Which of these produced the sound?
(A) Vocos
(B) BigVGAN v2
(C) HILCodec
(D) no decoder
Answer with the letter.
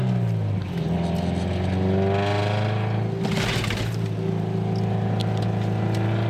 D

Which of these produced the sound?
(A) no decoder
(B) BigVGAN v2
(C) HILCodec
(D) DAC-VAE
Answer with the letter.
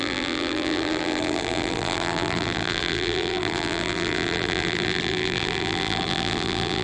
B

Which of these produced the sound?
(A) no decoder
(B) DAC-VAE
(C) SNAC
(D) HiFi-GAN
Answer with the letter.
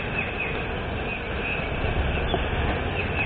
A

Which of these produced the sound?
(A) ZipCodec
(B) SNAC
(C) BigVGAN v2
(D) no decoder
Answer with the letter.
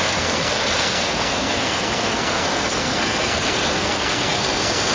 B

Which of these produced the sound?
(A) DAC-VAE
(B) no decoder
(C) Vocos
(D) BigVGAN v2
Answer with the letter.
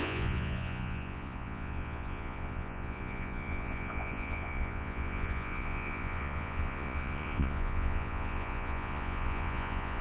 C